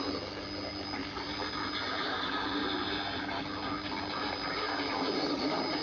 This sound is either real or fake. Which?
real